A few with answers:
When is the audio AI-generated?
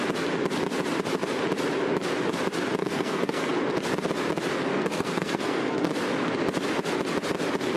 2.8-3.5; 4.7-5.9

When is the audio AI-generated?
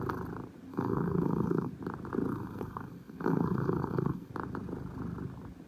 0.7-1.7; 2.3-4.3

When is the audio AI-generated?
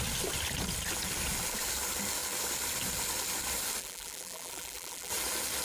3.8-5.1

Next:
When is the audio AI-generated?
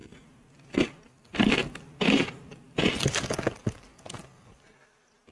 1.6-2.9